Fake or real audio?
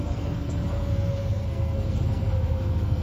fake